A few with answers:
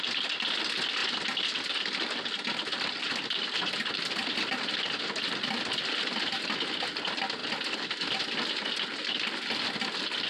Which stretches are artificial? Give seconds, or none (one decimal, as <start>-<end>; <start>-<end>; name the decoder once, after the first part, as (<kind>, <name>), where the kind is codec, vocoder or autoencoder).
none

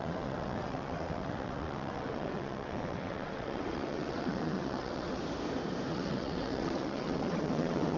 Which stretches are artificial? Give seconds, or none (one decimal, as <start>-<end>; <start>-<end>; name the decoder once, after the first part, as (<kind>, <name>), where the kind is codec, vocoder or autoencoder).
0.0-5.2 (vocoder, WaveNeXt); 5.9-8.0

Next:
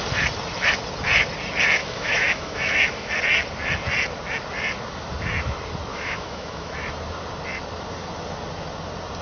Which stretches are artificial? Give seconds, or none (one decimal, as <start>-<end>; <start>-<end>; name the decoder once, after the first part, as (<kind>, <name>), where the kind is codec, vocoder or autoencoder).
1.8-3.1 (autoencoder, DAC-VAE); 5.9-6.7